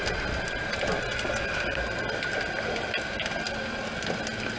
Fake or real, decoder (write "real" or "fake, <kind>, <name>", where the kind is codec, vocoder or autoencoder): real